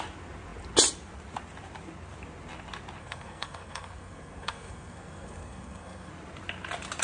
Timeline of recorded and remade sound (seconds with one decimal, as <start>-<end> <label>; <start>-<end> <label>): 0.0-3.0 recorded; 3.0-6.1 remade; 6.1-7.0 recorded